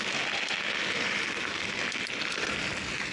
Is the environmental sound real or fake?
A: real